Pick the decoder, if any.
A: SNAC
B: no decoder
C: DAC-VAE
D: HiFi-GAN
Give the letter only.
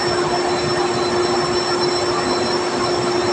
B